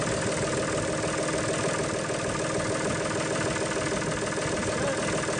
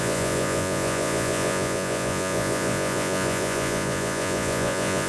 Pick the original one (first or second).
first